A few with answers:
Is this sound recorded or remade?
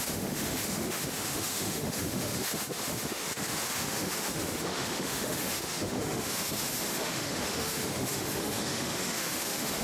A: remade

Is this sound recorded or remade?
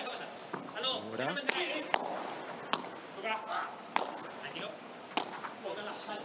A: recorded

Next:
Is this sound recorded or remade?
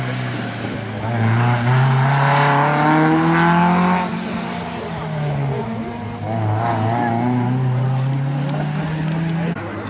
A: recorded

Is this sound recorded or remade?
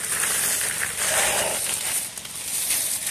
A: recorded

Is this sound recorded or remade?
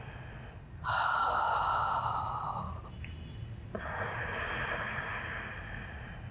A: recorded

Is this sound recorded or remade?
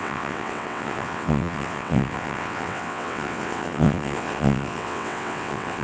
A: remade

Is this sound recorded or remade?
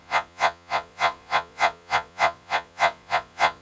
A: remade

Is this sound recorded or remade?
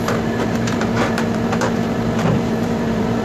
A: remade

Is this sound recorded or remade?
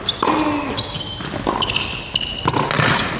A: recorded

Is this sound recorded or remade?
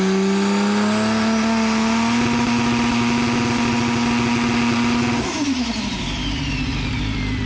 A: recorded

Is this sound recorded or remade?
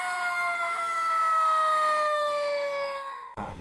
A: remade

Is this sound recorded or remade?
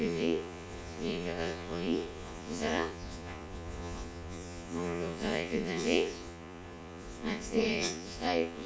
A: remade